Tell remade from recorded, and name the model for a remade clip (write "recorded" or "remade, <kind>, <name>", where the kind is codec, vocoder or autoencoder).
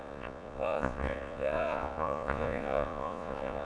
remade, vocoder, Vocos